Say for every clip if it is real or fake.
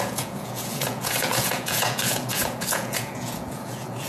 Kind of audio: fake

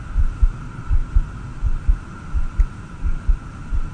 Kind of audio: real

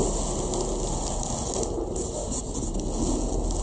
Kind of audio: real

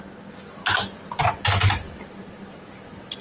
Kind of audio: real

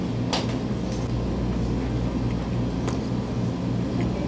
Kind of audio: real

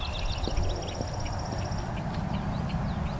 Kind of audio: real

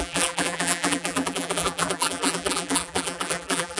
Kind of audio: fake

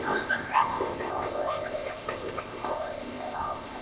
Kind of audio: fake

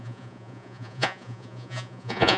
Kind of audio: fake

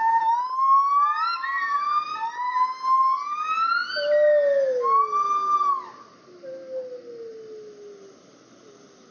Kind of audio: real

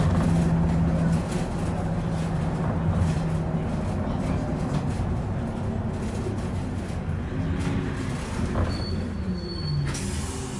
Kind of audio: real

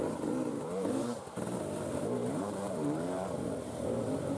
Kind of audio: fake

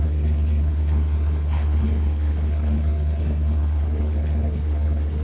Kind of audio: fake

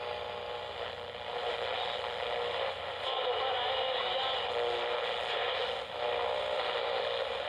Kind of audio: real